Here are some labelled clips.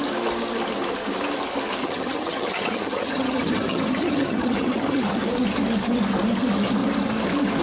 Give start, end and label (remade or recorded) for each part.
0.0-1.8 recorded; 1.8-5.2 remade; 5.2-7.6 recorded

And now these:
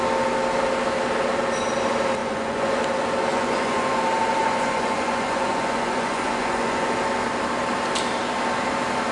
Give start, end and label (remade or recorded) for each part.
0.0-2.2 recorded; 2.2-2.8 remade; 2.8-3.3 recorded; 3.3-4.0 remade; 4.0-4.4 recorded; 4.4-6.9 remade; 6.9-9.1 recorded